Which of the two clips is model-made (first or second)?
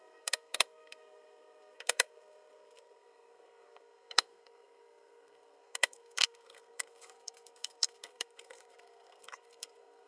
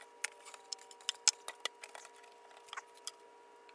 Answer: first